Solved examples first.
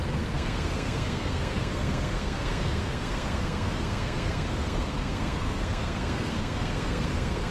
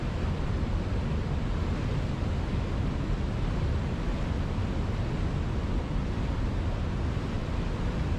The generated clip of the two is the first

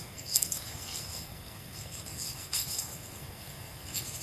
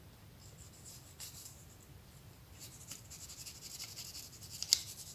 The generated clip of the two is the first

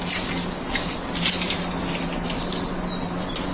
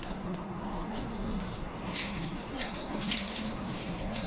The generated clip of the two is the second